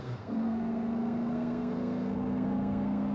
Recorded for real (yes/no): no